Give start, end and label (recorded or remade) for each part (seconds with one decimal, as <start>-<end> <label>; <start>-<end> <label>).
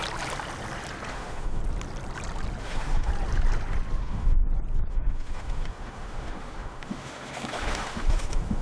0.0-1.1 recorded; 1.1-1.6 remade; 1.6-2.6 recorded; 2.6-3.1 remade; 3.1-4.0 recorded; 4.0-4.4 remade; 4.4-4.9 recorded; 4.9-8.6 remade